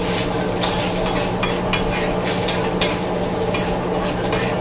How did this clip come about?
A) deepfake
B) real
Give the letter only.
B